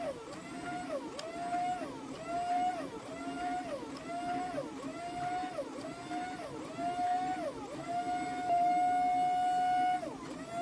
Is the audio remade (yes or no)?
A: no